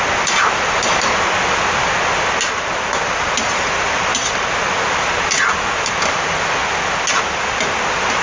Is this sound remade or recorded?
recorded